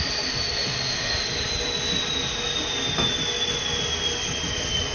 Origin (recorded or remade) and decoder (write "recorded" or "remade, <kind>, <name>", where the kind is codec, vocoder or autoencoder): recorded